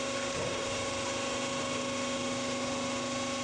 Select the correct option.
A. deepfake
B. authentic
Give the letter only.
B